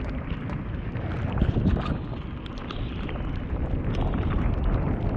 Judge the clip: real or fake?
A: real